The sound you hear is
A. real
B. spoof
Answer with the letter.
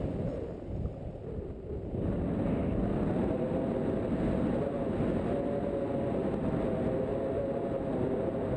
A